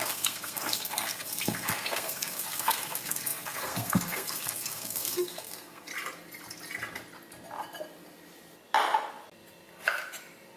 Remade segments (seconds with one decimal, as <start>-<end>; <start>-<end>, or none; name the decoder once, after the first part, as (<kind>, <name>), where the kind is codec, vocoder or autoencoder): 0.0-5.9 (codec, SNAC)